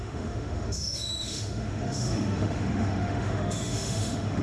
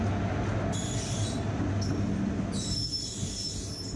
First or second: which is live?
second